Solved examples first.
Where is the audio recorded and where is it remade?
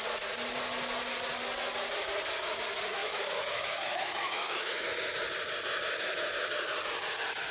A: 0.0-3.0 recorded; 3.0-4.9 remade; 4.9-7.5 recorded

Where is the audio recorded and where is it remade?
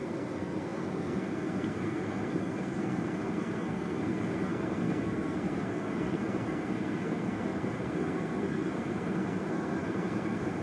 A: 0.0-10.6 remade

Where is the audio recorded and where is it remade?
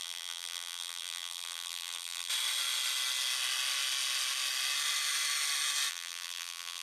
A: 0.0-2.3 remade; 2.3-5.9 recorded; 5.9-6.8 remade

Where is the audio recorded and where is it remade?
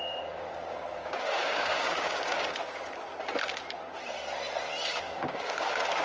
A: 0.0-3.1 remade; 3.1-5.0 recorded; 5.0-6.0 remade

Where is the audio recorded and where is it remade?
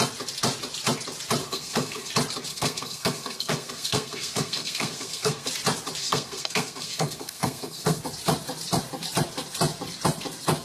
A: 0.0-1.4 recorded; 1.4-2.1 remade; 2.1-2.5 recorded; 2.5-5.5 remade; 5.5-6.0 recorded; 6.0-8.0 remade; 8.0-10.6 recorded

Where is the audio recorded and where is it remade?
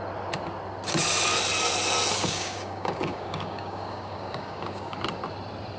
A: 0.0-2.2 recorded; 2.2-5.0 remade; 5.0-5.8 recorded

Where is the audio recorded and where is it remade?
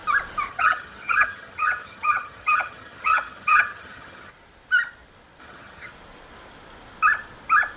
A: 0.0-0.5 recorded; 0.5-4.3 remade; 4.3-5.4 recorded; 5.4-5.9 remade; 5.9-7.8 recorded